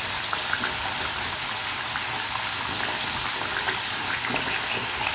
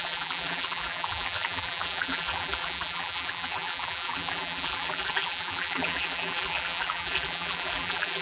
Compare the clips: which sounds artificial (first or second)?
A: second